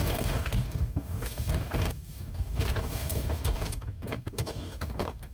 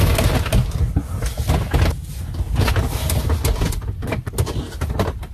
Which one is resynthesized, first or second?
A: first